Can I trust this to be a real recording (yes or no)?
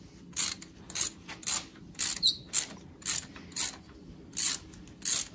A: yes